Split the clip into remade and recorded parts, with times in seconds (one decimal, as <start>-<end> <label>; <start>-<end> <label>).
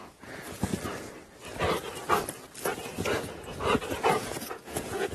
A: 0.0-0.7 remade; 0.7-2.7 recorded; 2.7-5.1 remade